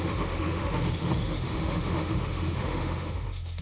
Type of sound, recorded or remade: remade